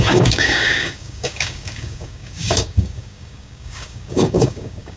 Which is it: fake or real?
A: fake